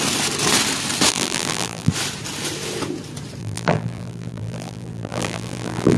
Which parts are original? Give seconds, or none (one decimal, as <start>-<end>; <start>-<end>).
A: 0.0-1.1; 1.9-3.4